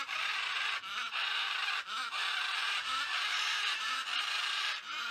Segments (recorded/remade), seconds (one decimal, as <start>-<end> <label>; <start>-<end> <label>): 0.0-4.0 remade; 4.0-4.5 recorded; 4.5-5.1 remade